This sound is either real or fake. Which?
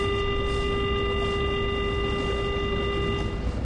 real